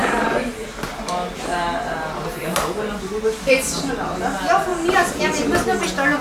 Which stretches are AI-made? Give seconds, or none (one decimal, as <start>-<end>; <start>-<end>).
0.0-0.9; 2.4-3.5; 4.7-5.2

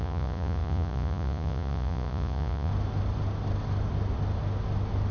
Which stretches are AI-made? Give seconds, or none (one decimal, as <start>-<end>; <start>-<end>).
0.0-2.7